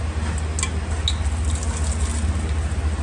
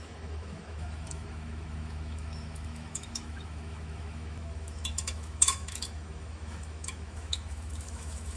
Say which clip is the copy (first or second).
second